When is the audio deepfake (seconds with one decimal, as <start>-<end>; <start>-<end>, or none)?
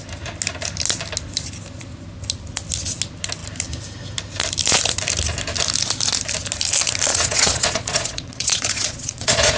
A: 7.1-9.6